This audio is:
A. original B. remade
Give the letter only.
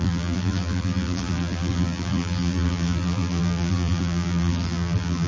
B